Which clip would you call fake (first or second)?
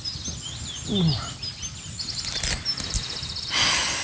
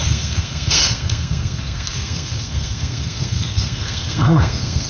second